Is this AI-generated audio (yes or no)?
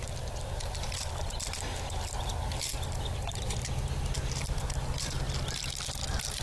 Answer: no